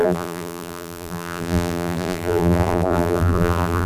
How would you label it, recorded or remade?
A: remade